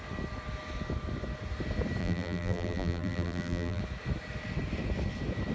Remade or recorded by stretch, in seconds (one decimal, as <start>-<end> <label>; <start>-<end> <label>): 0.0-2.0 recorded; 2.0-3.8 remade; 3.8-5.5 recorded